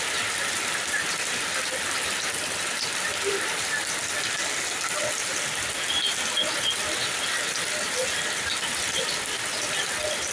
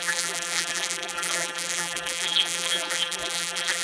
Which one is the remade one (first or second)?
second